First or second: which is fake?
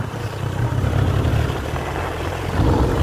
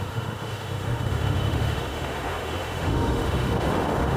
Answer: second